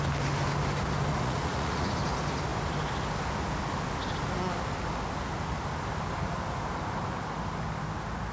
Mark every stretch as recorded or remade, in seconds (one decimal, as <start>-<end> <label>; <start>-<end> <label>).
0.0-1.1 recorded; 1.1-1.9 remade; 1.9-8.3 recorded